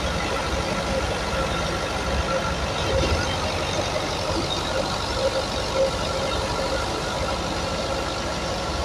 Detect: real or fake real